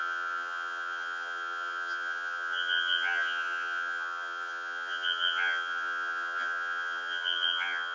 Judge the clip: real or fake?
fake